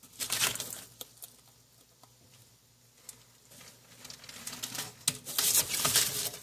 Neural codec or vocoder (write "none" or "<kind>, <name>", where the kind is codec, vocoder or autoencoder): none